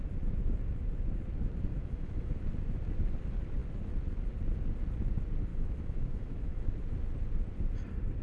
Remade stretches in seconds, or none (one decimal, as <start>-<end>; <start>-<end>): 1.7-2.4; 5.5-6.7